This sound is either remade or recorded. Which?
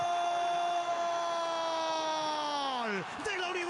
remade